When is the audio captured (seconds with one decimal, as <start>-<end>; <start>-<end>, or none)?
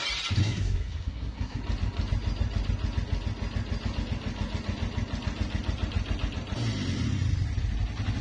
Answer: 0.0-0.4; 1.6-8.2